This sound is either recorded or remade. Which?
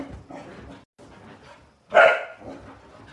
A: recorded